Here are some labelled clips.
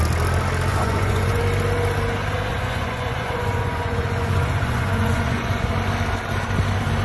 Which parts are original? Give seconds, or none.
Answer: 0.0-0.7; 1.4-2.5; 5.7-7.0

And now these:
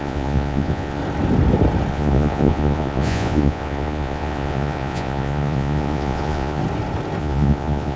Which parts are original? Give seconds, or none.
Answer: 1.0-1.9; 6.6-7.2

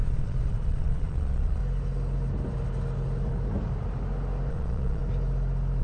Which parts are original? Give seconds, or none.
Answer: 1.6-4.5; 5.0-5.8